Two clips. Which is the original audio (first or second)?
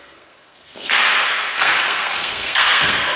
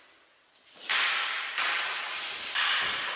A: second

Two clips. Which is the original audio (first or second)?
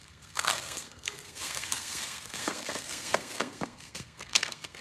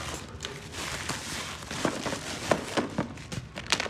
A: second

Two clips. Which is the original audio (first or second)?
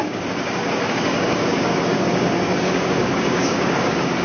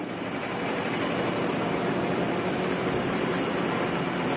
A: second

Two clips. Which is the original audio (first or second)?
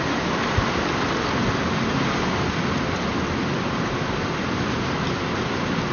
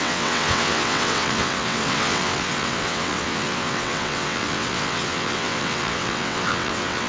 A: first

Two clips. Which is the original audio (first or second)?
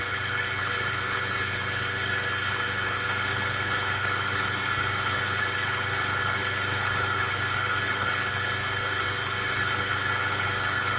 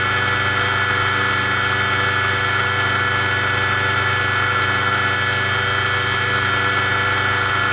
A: second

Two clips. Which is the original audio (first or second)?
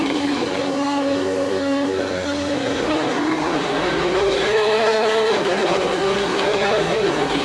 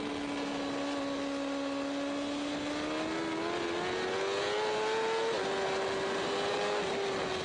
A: second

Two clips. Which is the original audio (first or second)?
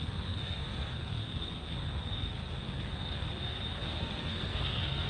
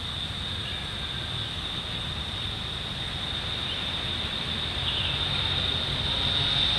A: second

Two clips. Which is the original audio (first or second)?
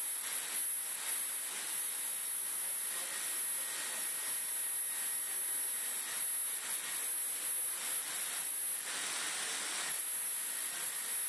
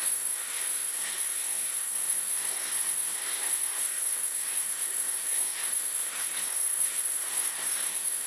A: first